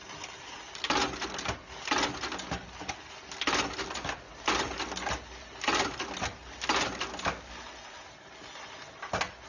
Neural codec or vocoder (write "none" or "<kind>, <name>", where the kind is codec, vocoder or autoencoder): none